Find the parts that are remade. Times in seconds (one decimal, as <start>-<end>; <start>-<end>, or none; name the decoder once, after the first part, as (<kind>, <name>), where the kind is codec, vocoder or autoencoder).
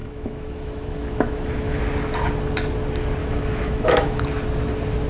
0.0-1.8 (autoencoder, DAC-VAE); 3.2-4.2